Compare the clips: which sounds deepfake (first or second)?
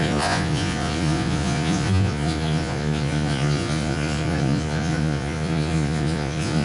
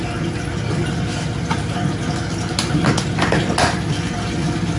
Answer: first